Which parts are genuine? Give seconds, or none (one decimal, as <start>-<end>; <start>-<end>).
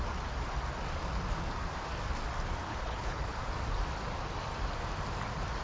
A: 0.0-2.7; 3.4-5.6